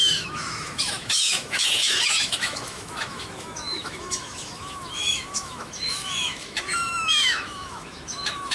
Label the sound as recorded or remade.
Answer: remade